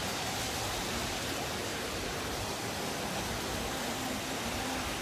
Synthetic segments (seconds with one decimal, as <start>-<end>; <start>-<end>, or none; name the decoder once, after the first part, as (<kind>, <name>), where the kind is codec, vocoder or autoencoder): 0.0-1.1 (vocoder, BigVGAN v2); 1.7-2.6